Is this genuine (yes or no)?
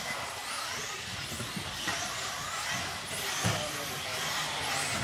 yes